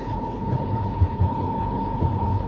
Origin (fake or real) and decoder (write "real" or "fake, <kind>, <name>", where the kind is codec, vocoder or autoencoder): fake, codec, HILCodec